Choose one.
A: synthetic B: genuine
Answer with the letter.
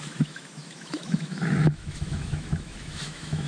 A